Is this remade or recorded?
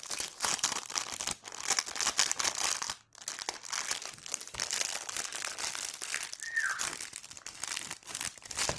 recorded